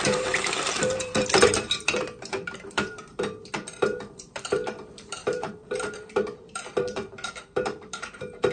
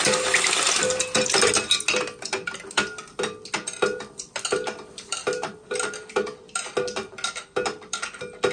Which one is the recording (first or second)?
second